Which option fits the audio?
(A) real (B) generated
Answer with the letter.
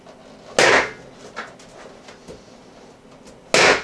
A